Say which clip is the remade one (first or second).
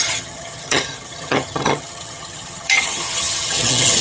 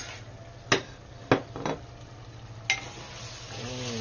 first